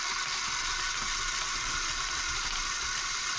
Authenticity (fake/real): real